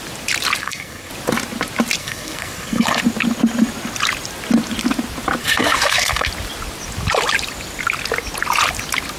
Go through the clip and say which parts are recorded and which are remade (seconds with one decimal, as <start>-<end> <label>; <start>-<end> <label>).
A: 0.0-0.6 recorded; 0.6-1.1 remade; 1.1-2.0 recorded; 2.0-3.0 remade; 3.0-5.4 recorded; 5.4-6.3 remade; 6.3-9.2 recorded